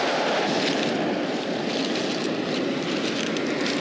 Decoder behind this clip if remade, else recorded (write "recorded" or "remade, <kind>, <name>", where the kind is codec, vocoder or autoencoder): recorded